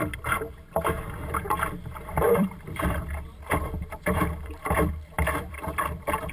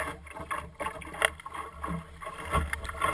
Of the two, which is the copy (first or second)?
first